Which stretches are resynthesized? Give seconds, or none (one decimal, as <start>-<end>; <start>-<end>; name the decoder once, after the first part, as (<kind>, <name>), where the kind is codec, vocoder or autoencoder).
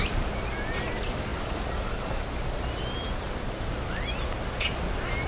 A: none